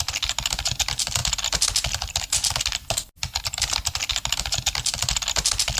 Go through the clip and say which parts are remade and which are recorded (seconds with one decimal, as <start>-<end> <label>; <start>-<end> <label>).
0.0-5.8 recorded